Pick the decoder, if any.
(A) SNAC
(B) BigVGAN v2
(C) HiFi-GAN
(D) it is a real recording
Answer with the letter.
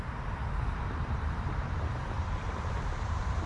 D